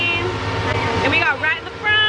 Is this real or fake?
real